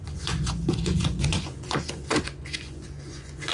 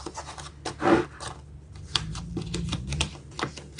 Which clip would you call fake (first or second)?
first